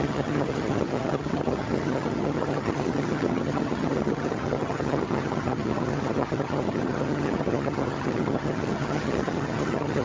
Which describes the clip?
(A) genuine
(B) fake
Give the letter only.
B